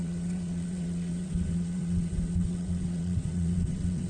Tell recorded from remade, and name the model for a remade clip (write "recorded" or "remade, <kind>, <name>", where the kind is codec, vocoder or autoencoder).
remade, vocoder, WaveNeXt